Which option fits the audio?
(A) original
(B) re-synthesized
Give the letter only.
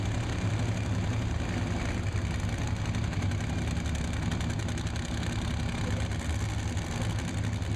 A